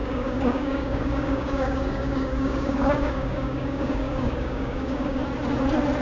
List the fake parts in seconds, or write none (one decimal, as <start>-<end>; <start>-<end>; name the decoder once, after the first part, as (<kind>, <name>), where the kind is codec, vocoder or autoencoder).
0.0-5.2 (codec, DAC)